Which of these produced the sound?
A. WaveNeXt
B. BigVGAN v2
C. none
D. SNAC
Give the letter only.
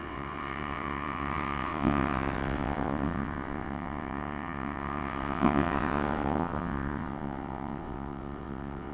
A